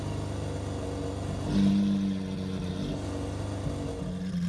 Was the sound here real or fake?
real